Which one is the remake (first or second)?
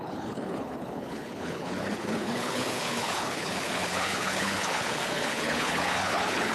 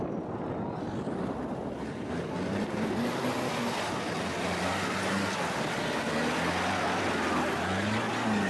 first